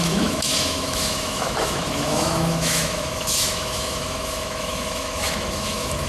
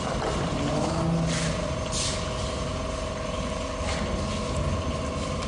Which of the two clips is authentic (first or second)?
second